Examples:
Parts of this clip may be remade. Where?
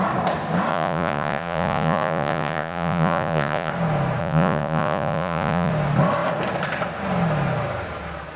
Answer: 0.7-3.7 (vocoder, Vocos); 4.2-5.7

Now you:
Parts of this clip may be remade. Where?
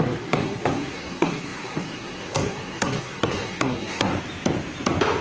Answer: 0.0-4.1 (codec, SNAC)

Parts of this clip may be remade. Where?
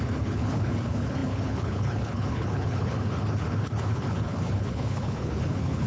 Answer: 0.0-5.9 (codec, HILCodec)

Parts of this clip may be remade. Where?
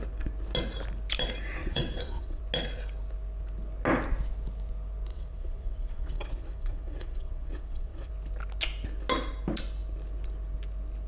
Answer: 1.6-2.4 (vocoder, WaveNeXt); 5.1-8.1